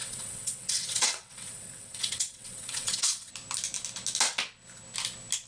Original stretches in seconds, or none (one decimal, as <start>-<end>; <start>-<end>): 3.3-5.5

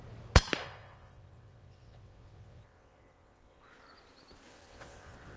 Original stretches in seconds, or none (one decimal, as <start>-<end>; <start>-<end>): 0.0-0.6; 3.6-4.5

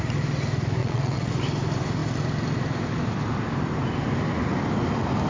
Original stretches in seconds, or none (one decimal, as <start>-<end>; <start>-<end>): 0.0-0.8; 1.3-5.3

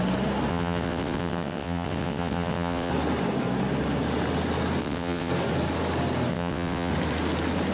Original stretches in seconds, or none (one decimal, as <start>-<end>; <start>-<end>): 0.0-0.5; 2.9-4.8; 5.3-6.3; 6.9-7.7